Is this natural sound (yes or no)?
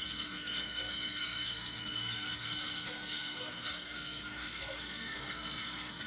no